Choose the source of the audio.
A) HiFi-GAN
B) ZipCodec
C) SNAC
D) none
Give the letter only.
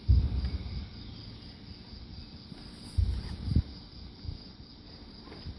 D